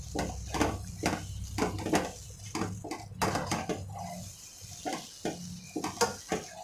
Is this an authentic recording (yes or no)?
yes